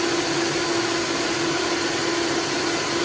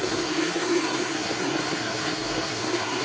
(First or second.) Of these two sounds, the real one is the first